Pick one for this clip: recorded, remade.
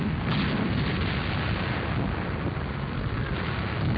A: recorded